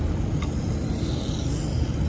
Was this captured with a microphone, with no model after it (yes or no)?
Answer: yes